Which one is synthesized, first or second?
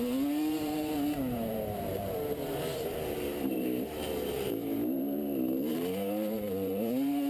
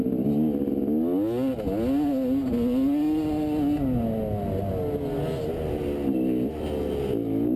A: first